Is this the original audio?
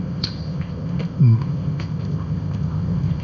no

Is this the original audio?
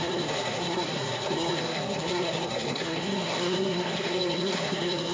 no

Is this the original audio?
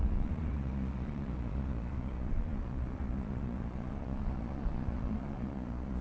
no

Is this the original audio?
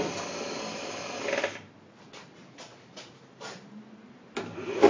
yes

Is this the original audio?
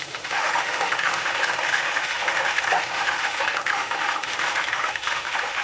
no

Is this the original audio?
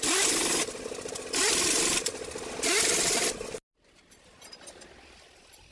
yes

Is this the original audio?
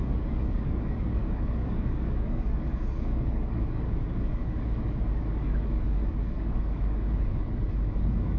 no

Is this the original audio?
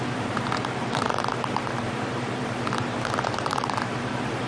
no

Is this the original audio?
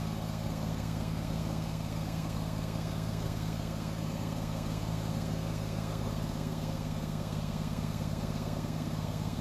no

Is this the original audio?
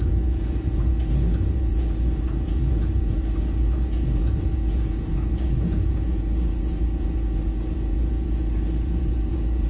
no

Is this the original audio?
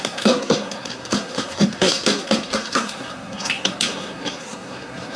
no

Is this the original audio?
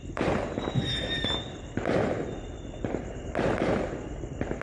yes